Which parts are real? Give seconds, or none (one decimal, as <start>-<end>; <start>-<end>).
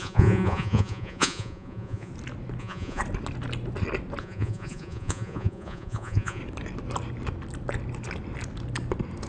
2.1-2.6; 3.0-4.2; 6.4-9.3